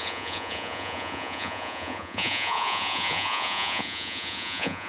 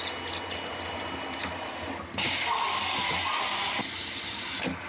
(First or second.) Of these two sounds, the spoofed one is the first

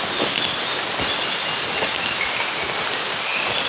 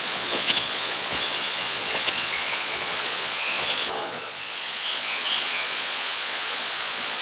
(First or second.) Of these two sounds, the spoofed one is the second